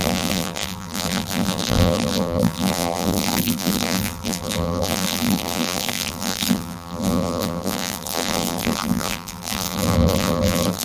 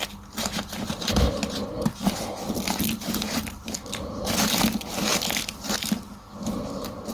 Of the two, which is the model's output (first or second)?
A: first